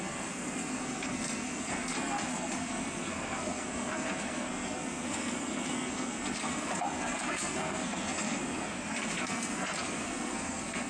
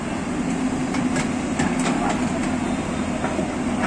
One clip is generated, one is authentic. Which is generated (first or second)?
first